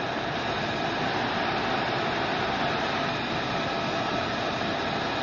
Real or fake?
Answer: real